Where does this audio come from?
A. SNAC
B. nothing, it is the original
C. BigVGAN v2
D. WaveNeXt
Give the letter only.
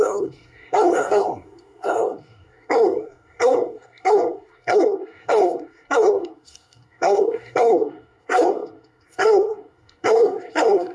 A